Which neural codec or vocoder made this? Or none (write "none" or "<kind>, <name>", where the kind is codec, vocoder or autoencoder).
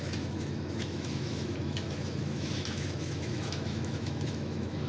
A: autoencoder, DAC-VAE